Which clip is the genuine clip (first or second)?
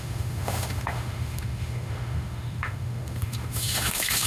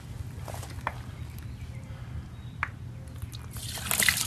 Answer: second